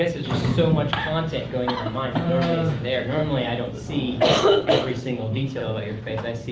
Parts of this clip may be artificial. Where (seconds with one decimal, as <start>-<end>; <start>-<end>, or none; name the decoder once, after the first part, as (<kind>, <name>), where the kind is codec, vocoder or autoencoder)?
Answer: 0.0-0.5 (codec, DAC); 2.3-3.2; 4.4-5.6